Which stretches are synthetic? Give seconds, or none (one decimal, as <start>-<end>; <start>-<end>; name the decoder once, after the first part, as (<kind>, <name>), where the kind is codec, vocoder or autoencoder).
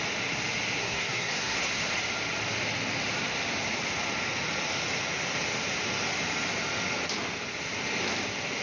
0.8-1.7 (codec, SNAC)